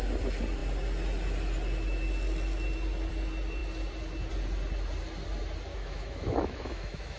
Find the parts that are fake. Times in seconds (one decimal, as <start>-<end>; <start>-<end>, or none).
5.7-7.2